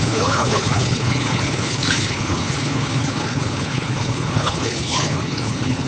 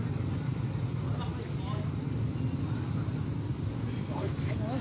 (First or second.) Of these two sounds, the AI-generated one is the first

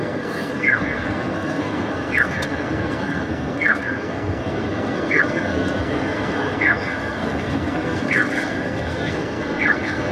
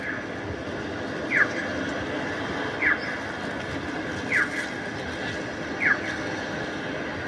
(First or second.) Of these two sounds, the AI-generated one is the first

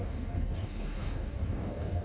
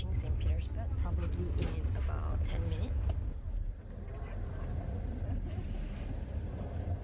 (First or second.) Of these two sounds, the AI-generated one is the first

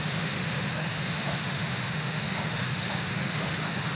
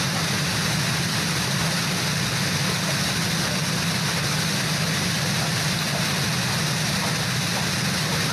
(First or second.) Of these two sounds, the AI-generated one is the first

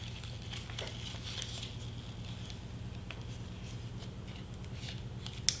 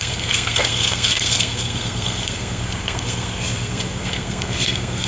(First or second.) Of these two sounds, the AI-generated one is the second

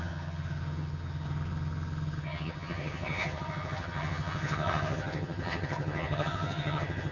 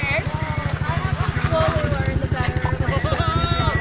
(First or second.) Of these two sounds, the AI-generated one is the first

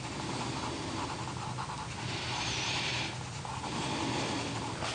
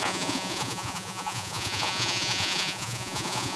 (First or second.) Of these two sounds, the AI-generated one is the second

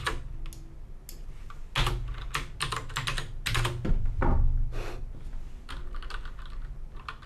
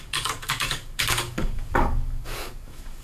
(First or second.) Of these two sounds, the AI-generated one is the second